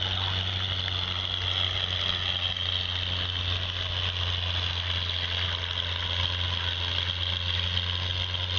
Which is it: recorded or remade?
recorded